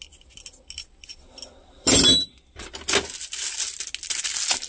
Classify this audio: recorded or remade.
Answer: recorded